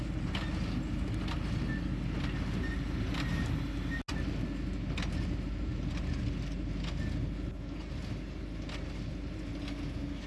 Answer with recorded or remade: recorded